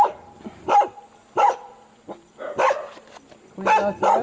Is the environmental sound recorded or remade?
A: recorded